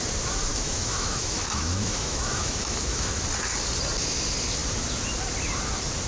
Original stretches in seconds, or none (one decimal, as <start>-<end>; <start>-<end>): 0.0-0.5; 3.2-6.1